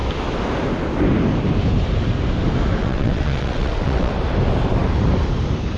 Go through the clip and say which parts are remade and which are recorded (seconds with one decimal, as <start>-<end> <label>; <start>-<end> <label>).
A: 0.0-2.8 recorded; 2.8-4.1 remade; 4.1-5.8 recorded